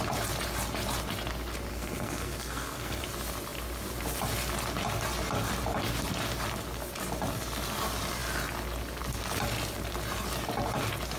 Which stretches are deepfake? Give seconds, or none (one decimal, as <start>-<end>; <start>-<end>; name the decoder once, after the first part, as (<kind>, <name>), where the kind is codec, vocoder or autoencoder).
1.7-3.0 (codec, SNAC)